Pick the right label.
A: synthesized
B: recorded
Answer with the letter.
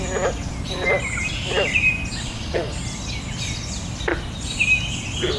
B